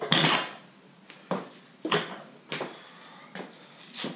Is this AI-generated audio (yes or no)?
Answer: no